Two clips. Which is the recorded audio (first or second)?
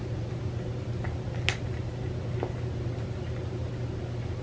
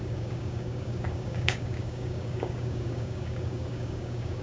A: first